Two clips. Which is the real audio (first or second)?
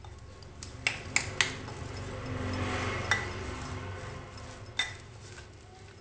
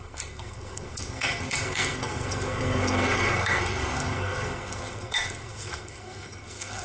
first